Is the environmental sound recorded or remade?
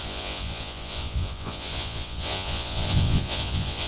remade